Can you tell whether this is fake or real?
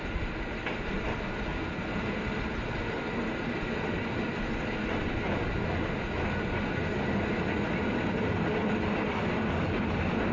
real